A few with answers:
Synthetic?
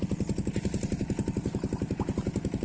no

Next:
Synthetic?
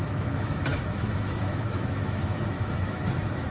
yes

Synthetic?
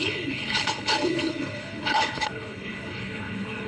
yes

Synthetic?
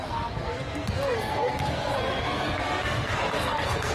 yes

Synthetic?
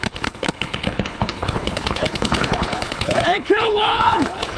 yes